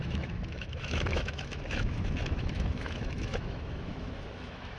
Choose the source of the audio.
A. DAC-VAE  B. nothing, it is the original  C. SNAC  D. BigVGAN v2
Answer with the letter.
A